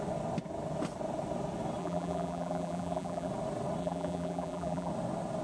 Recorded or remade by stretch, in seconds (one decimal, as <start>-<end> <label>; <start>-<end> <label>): 0.0-1.8 recorded; 1.8-3.3 remade; 3.3-3.8 recorded; 3.8-4.9 remade; 4.9-5.4 recorded